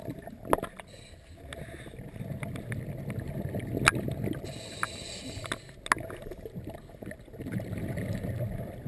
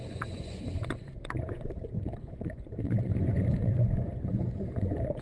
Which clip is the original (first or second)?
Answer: first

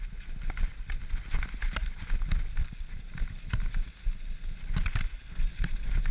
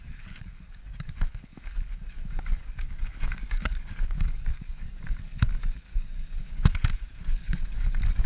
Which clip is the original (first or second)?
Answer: first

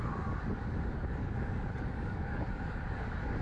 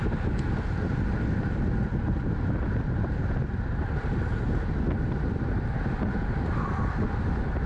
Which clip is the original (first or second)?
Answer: second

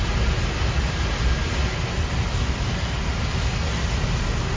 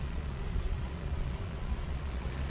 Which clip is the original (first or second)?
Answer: first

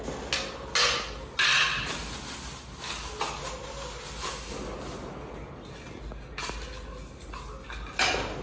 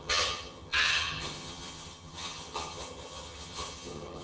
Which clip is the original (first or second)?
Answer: first